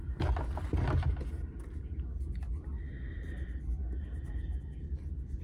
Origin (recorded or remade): recorded